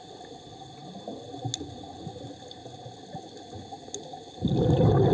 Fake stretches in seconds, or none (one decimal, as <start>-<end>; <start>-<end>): none